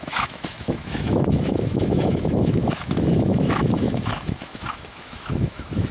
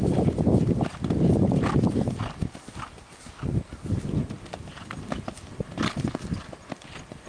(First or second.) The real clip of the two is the second